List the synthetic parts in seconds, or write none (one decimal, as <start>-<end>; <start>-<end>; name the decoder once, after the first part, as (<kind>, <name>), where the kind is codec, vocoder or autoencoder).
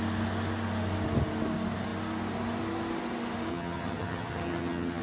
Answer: 3.5-5.0 (vocoder, HiFi-GAN)